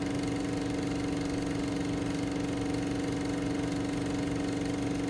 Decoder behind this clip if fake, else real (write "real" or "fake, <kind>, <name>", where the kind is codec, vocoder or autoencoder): real